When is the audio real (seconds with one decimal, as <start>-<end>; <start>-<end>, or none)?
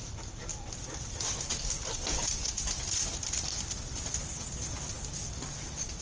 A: 0.0-6.0